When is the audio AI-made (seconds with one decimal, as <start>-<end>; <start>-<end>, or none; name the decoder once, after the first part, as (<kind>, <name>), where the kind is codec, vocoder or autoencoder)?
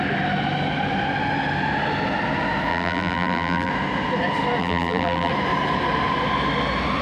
2.7-3.7 (vocoder, BigVGAN v2); 4.6-5.3